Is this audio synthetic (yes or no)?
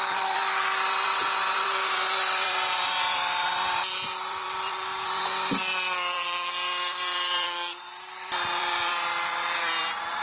yes